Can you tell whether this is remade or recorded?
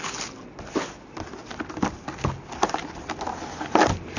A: recorded